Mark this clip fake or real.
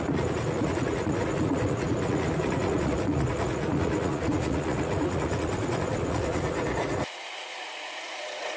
fake